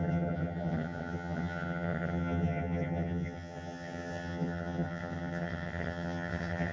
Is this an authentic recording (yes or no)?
no